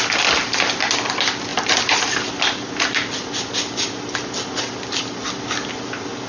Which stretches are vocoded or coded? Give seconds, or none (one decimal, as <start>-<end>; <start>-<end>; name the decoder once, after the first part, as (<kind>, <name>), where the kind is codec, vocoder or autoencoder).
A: none